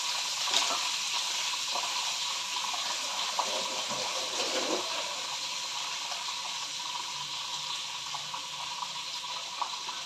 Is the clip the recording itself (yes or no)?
yes